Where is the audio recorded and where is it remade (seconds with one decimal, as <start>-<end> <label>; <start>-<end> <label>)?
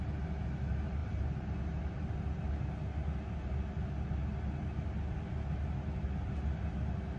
0.0-7.2 recorded